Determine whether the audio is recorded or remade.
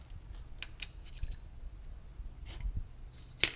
recorded